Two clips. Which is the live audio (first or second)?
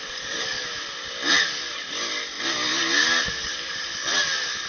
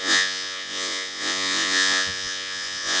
first